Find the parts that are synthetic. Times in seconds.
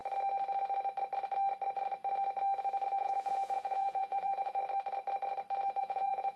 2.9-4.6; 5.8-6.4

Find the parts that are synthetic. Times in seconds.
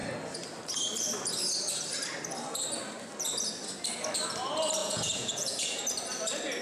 4.8-5.8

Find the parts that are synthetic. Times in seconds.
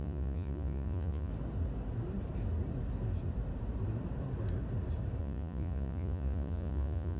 0.0-1.3; 5.2-7.2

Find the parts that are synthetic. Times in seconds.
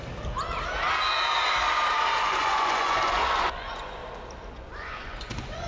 2.2-4.0; 4.5-5.7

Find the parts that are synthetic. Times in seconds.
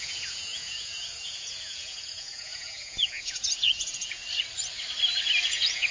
0.0-4.2; 5.5-5.9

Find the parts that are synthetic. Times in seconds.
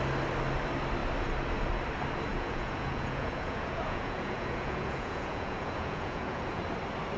2.3-6.6